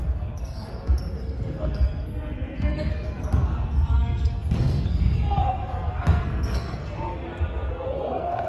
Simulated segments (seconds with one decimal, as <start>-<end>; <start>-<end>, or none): 0.0-7.1; 7.7-8.5